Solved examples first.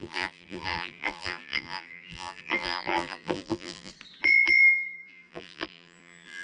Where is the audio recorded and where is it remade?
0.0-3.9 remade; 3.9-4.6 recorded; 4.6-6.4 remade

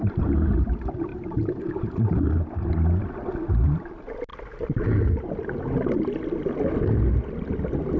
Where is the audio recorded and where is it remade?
0.0-1.1 recorded; 1.1-1.6 remade; 1.6-8.0 recorded